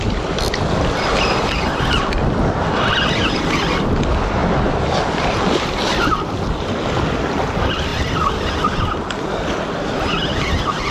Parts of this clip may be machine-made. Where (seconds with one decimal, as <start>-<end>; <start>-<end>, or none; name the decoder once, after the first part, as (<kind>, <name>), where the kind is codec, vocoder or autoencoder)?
none